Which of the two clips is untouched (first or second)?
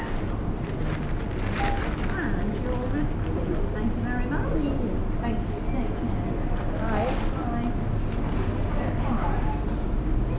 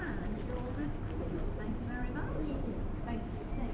first